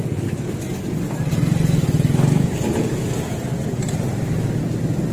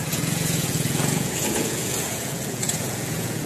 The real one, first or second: first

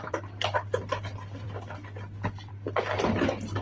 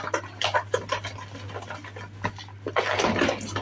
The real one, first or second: second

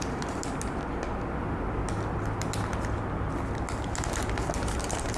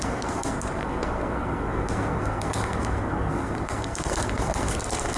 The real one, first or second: first